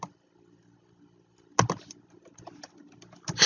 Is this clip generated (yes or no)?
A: no